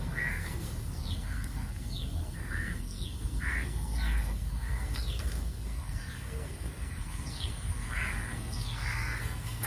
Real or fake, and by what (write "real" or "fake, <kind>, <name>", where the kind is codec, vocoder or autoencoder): fake, codec, SNAC